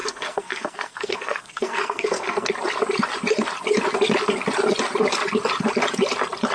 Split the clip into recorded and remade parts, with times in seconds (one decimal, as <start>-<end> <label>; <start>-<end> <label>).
0.0-2.5 remade; 2.5-6.5 recorded

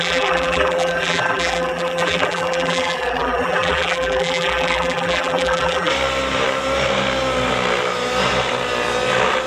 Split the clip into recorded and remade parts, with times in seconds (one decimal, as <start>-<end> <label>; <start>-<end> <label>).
0.0-5.9 remade; 5.9-9.5 recorded

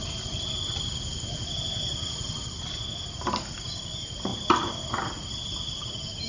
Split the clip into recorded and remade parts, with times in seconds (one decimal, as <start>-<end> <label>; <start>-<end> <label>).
0.0-6.3 recorded

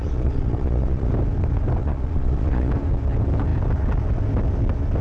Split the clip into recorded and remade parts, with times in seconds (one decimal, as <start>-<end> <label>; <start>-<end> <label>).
0.0-1.1 remade; 1.1-1.8 recorded; 1.8-2.7 remade; 2.7-5.0 recorded

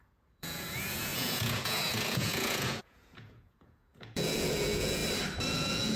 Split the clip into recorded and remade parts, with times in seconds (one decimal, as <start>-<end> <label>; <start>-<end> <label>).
0.0-5.0 remade; 5.0-5.5 recorded; 5.5-6.0 remade

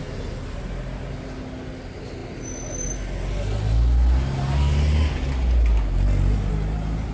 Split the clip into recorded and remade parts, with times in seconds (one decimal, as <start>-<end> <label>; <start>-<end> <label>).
0.0-7.1 recorded

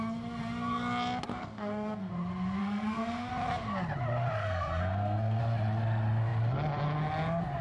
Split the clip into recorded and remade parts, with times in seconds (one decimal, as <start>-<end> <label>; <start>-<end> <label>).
0.0-1.3 recorded; 1.3-2.1 remade; 2.1-2.6 recorded; 2.6-3.3 remade; 3.3-4.4 recorded; 4.4-5.4 remade; 5.4-7.6 recorded